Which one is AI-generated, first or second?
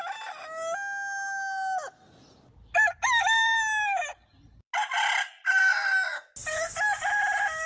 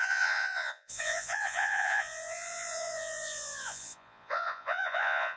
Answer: second